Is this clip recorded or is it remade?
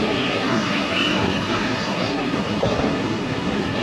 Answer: remade